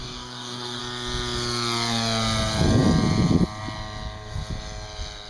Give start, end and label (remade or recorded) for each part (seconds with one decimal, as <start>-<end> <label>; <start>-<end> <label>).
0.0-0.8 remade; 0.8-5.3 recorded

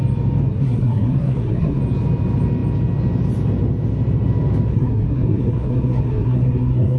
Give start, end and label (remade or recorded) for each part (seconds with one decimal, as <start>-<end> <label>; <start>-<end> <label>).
0.0-0.5 recorded; 0.5-1.8 remade; 1.8-4.7 recorded; 4.7-7.0 remade

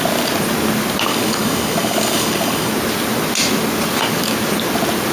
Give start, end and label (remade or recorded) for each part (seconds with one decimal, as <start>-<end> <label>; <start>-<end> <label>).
0.0-1.1 recorded; 1.1-2.7 remade; 2.7-5.1 recorded

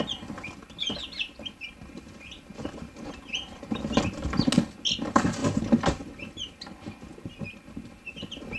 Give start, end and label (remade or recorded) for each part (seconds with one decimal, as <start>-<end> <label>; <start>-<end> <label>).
0.0-8.6 recorded

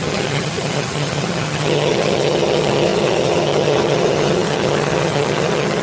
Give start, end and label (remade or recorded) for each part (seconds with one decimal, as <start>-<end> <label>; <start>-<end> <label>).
0.0-5.8 remade